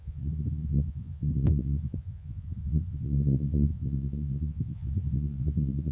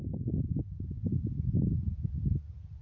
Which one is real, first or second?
second